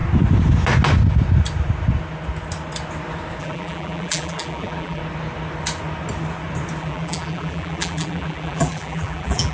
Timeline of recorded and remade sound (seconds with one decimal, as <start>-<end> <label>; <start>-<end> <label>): 0.0-3.4 recorded; 3.4-5.0 remade; 5.0-6.8 recorded; 6.8-9.5 remade